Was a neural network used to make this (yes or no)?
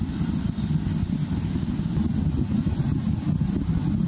no